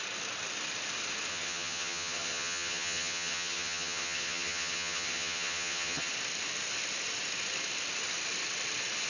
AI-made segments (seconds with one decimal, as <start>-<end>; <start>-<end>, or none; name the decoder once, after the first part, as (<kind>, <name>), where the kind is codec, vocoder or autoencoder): 1.3-6.1 (vocoder, HiFi-GAN)